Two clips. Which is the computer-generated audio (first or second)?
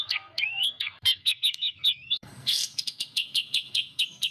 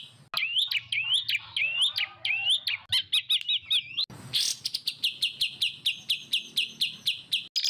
first